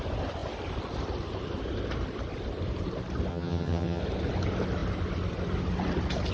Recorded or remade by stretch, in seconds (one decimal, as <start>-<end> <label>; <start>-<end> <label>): 0.0-3.3 recorded; 3.3-4.0 remade; 4.0-6.3 recorded